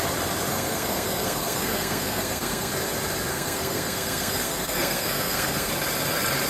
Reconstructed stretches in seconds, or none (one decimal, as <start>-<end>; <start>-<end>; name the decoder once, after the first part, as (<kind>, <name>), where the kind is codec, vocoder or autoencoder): 0.5-2.7 (codec, SNAC); 3.3-5.7